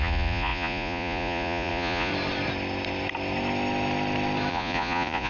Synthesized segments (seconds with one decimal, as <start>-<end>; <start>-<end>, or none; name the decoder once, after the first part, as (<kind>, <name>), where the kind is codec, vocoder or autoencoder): 0.0-2.1 (vocoder, Vocos); 4.5-5.3